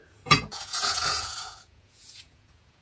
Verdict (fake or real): fake